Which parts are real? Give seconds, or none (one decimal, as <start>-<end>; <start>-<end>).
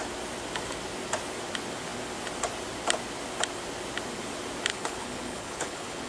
0.0-4.7